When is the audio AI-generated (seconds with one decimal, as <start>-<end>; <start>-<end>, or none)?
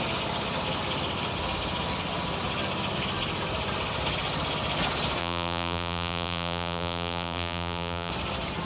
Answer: 5.2-8.1